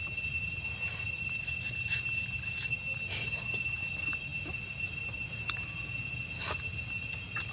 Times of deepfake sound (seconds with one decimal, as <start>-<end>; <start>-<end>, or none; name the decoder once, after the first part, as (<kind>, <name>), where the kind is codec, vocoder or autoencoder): none